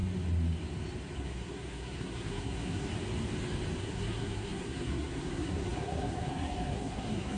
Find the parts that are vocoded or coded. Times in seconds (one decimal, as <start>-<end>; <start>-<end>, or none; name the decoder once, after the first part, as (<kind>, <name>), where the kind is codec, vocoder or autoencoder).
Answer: 1.2-2.9 (codec, SNAC); 3.8-7.4